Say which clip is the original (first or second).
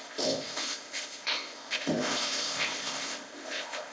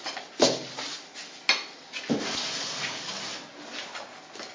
second